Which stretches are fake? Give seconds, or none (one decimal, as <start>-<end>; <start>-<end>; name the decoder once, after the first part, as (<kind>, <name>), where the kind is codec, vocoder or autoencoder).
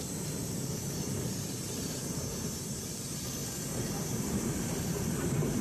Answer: 0.0-3.4 (vocoder, BigVGAN v2); 4.0-5.6